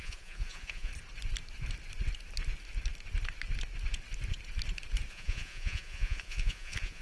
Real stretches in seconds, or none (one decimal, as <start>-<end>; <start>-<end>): 0.9-5.1